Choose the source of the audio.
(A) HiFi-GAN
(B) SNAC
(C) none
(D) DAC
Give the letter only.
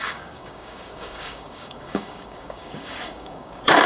D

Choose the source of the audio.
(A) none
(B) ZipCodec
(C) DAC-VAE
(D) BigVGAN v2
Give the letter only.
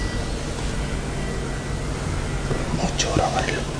A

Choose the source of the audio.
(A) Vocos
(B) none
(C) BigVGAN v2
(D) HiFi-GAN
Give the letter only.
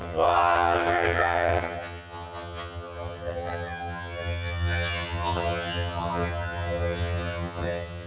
D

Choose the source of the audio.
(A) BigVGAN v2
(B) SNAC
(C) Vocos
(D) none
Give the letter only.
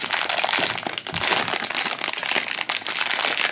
D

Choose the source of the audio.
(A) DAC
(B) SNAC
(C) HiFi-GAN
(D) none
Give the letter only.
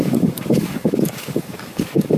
A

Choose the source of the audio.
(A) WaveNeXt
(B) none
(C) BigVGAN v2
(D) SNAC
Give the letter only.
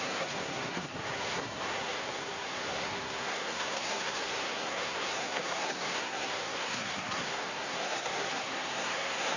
D